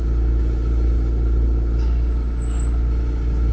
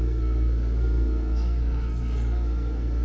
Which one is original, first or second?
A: first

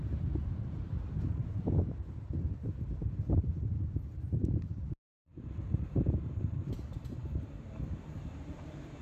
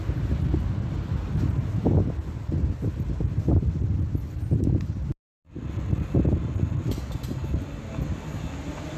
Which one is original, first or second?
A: second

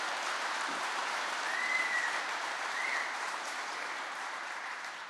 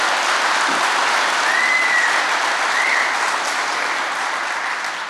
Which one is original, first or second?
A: second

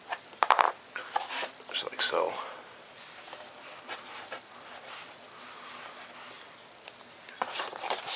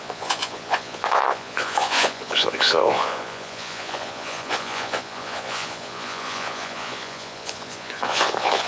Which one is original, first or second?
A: first